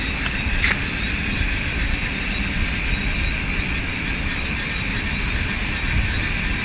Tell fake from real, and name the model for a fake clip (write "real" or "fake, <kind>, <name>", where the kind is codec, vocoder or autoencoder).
real